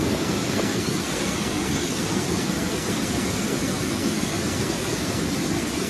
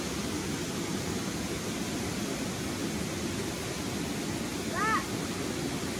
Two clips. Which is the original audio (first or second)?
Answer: second